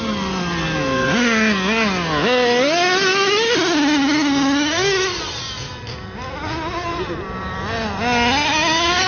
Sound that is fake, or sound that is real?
real